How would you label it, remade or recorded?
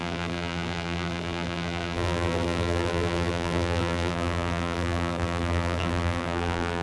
remade